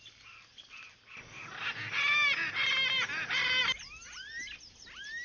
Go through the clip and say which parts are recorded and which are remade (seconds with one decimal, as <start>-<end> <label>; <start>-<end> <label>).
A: 0.0-5.2 recorded